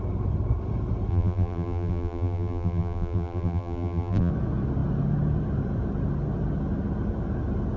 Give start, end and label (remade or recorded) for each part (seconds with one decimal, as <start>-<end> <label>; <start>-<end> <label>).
0.0-1.1 recorded; 1.1-4.3 remade; 4.3-7.8 recorded